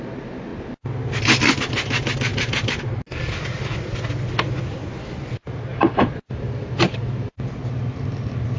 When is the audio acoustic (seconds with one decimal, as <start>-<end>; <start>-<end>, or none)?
0.0-2.3; 3.1-8.6